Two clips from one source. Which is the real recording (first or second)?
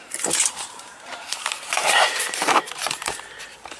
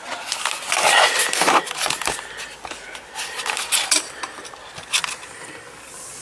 second